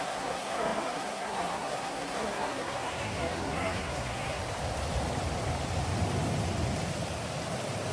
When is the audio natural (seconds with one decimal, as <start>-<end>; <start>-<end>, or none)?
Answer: 4.4-7.9